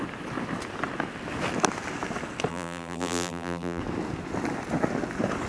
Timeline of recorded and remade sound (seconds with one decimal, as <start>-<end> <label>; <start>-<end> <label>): 0.0-2.5 recorded; 2.5-3.8 remade; 3.8-5.5 recorded